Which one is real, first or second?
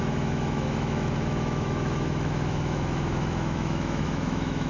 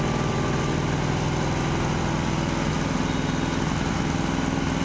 second